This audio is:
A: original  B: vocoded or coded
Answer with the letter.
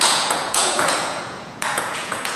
B